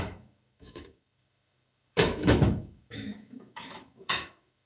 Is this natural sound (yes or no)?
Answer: no